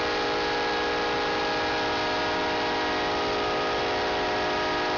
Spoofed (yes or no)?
no